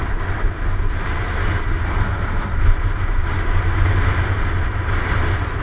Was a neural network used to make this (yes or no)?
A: no